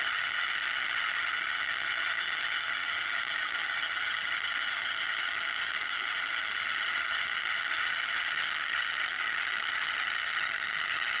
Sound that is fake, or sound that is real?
fake